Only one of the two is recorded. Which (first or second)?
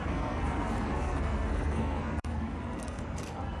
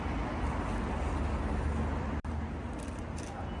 second